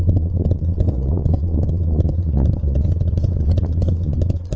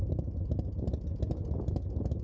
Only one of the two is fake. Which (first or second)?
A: first